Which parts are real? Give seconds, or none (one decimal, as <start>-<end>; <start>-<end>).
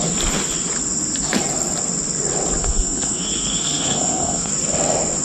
0.0-2.6; 4.5-5.2